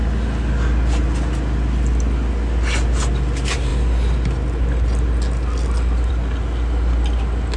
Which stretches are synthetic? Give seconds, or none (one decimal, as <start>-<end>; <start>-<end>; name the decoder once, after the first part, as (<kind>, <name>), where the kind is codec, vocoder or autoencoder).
none